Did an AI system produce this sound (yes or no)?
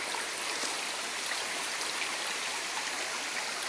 no